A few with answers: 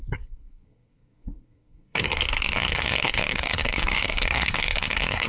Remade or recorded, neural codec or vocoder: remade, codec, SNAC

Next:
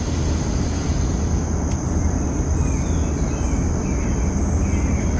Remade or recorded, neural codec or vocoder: recorded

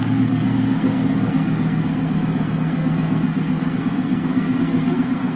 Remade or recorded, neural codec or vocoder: remade, codec, SNAC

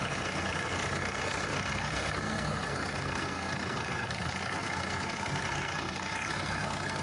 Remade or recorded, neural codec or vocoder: remade, codec, SNAC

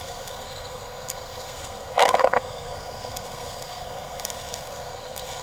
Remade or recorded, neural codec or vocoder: remade, codec, SNAC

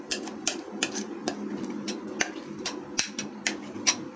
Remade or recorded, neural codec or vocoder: recorded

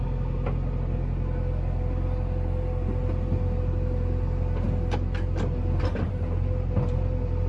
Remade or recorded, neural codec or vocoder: recorded